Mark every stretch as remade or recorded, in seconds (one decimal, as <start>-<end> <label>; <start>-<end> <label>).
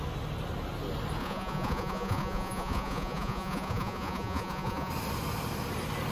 0.0-1.2 recorded; 1.2-4.9 remade; 4.9-6.1 recorded